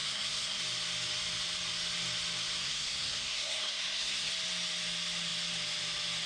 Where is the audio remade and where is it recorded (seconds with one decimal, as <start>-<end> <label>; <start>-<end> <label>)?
0.0-0.6 remade; 0.6-2.6 recorded; 2.6-4.3 remade; 4.3-6.3 recorded